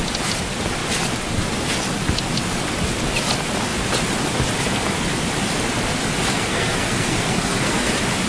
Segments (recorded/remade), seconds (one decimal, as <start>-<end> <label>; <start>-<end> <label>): 0.0-6.3 recorded; 6.3-7.9 remade; 7.9-8.3 recorded